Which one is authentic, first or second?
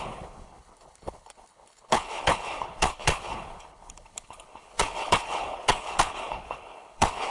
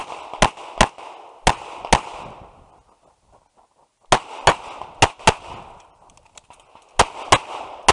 second